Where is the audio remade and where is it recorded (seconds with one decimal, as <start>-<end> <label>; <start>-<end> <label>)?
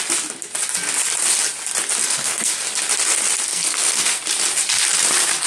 0.0-2.0 recorded; 2.0-2.5 remade; 2.5-3.5 recorded; 3.5-4.2 remade; 4.2-5.5 recorded